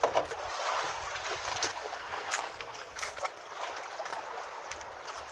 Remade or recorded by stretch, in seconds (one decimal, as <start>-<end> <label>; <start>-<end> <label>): 0.0-1.5 recorded; 1.5-3.2 remade; 3.2-5.3 recorded